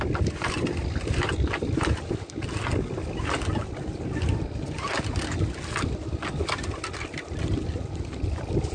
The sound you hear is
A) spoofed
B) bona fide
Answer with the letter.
B